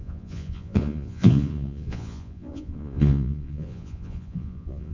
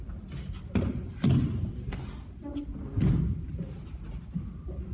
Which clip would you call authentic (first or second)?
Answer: second